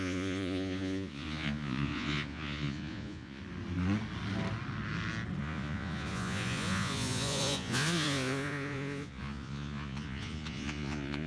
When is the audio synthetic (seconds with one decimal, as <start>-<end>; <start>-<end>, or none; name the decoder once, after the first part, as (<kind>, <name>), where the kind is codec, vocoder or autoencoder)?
0.0-3.4 (vocoder, Vocos); 5.4-11.3